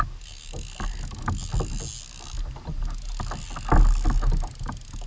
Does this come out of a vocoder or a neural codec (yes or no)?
no